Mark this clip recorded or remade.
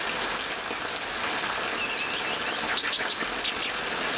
recorded